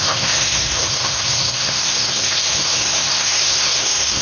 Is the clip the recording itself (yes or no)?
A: no